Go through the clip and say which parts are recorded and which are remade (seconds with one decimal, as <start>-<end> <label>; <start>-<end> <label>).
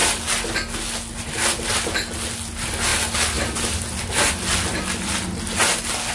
0.0-6.1 recorded